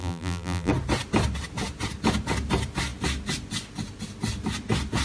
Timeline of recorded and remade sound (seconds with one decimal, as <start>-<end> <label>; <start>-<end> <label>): 0.0-0.7 remade; 0.7-5.0 recorded